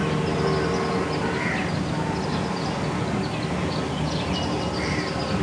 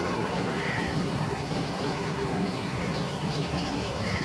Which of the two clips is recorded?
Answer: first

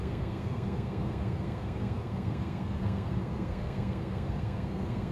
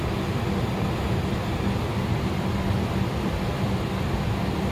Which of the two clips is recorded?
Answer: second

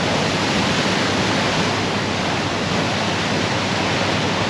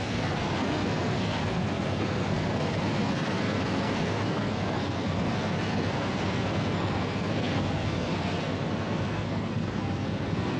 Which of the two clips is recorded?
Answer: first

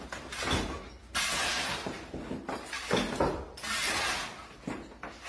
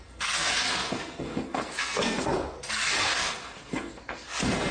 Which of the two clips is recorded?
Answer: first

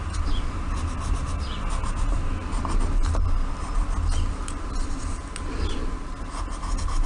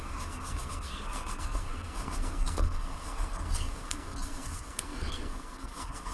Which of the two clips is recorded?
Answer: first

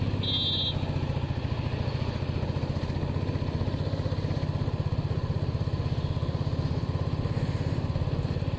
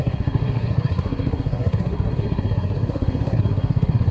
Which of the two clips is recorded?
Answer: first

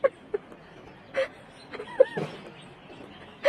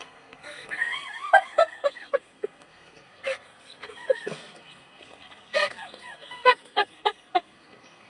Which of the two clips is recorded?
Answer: first